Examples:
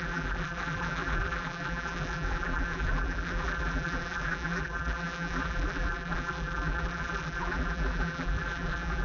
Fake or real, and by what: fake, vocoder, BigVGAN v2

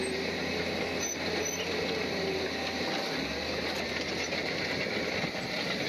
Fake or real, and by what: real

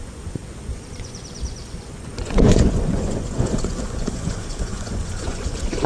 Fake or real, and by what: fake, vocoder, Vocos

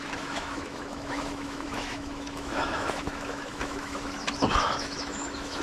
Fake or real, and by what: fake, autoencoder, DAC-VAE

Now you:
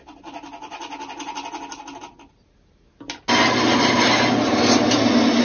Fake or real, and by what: real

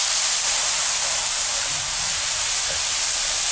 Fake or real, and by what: fake, vocoder, BigVGAN v2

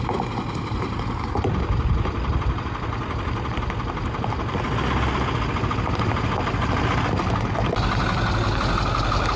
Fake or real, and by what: real